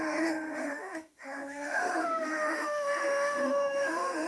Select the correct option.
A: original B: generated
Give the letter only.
B